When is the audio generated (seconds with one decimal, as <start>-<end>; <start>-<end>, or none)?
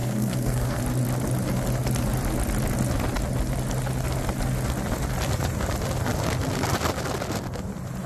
0.0-0.8